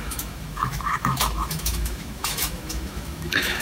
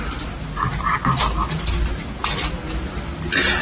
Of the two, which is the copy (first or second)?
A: first